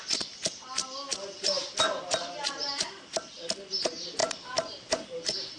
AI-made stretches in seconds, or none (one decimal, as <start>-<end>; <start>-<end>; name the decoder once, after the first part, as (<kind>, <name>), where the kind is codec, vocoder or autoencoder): none

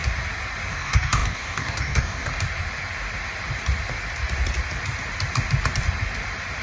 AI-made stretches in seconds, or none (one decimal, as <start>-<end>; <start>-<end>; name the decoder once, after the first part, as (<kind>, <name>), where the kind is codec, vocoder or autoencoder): 0.7-2.3 (codec, DAC)

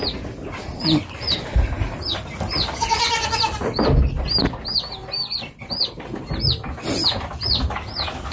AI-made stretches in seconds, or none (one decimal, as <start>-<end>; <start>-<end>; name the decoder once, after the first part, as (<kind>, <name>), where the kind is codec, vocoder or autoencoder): none

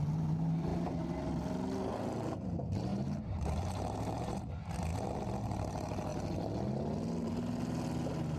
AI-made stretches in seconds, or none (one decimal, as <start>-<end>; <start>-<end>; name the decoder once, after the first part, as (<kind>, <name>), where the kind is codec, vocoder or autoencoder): 2.9-4.5 (vocoder, BigVGAN v2)

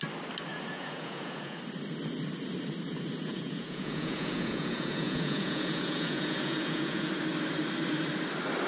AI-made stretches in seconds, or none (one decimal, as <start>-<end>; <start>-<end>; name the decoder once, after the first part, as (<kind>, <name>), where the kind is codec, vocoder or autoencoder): 0.5-1.6 (vocoder, Vocos); 3.2-7.1

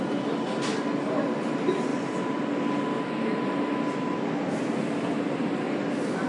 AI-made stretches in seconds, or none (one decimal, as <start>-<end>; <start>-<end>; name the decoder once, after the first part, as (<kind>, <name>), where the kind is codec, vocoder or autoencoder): none

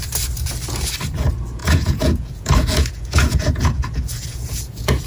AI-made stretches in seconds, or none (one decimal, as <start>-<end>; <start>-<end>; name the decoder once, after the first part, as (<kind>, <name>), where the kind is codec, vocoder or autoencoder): 1.2-5.1 (vocoder, Vocos)

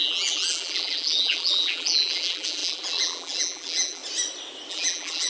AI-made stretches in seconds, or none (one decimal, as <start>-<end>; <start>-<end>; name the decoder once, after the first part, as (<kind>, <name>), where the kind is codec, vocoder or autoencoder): 0.0-4.0 (vocoder, BigVGAN v2); 4.7-5.3